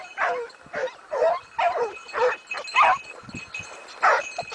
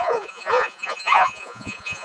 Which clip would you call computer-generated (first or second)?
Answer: second